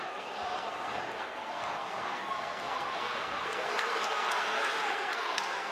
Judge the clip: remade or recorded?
remade